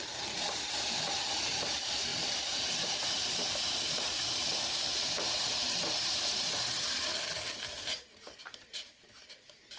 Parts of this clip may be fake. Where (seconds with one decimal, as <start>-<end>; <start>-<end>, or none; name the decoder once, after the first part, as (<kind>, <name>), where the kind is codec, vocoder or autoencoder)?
0.0-9.8 (vocoder, BigVGAN v2)